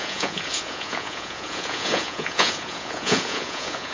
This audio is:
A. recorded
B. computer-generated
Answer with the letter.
B